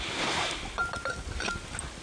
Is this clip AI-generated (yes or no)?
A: no